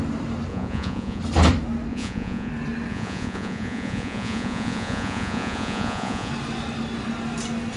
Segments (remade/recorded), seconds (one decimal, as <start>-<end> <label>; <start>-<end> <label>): 0.0-0.5 recorded; 0.5-1.2 remade; 1.2-1.9 recorded; 1.9-2.5 remade; 2.5-2.9 recorded; 2.9-6.3 remade; 6.3-7.8 recorded